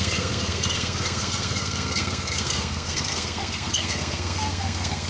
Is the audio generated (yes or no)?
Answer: yes